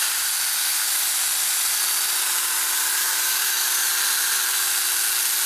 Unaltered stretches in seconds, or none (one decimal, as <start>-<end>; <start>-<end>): 0.0-0.6; 1.1-3.0; 3.9-5.5